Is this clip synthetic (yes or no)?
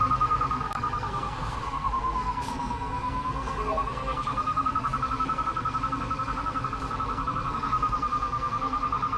yes